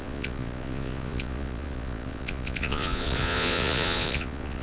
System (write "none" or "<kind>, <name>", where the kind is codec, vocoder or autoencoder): vocoder, Vocos